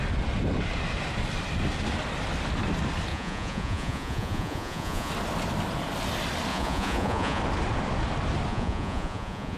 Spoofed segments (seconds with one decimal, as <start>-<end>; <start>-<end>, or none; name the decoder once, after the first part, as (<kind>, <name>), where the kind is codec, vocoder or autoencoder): 3.1-5.1 (vocoder, Vocos); 6.5-7.4; 8.5-9.6